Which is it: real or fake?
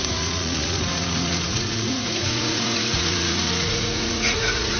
fake